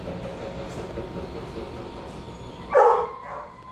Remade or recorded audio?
recorded